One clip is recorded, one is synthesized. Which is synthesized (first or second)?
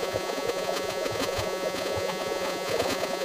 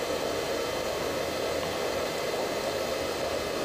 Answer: first